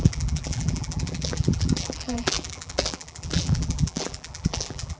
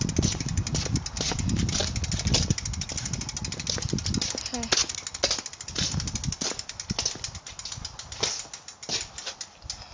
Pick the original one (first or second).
second